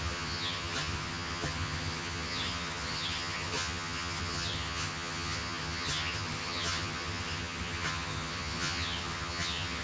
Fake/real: fake